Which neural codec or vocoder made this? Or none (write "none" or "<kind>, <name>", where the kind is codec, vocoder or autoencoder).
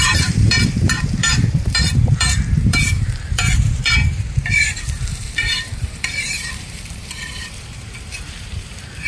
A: vocoder, BigVGAN v2